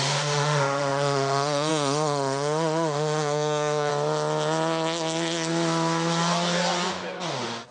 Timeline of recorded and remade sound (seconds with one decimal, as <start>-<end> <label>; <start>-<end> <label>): 0.0-3.9 remade; 3.9-7.7 recorded